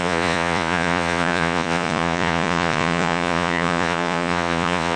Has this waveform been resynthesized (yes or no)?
yes